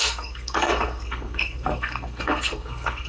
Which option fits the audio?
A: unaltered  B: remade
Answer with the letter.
B